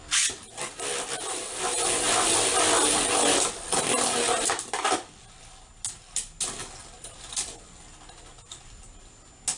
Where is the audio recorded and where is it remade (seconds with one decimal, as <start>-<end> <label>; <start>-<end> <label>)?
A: 0.0-9.6 recorded